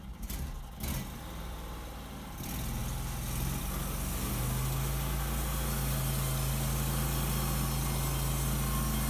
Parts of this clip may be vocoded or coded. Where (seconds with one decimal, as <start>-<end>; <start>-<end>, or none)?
0.0-0.5